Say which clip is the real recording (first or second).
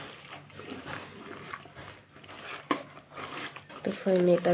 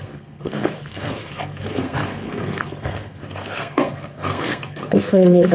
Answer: first